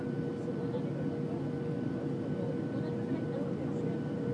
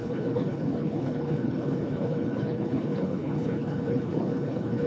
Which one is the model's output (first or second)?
second